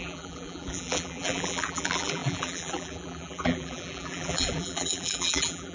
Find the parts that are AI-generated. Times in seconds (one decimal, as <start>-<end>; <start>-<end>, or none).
0.0-5.7